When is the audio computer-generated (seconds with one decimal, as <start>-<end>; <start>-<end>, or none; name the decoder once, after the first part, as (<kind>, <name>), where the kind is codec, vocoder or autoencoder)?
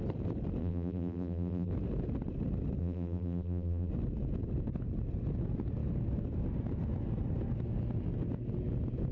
0.6-1.7 (vocoder, BigVGAN v2); 2.8-3.9